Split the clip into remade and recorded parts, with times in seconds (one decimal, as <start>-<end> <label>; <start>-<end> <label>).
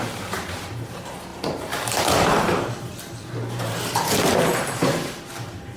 0.0-5.8 remade